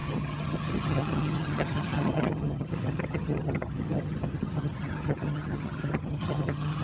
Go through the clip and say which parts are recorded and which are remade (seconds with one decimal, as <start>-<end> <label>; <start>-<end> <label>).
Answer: 0.0-6.8 remade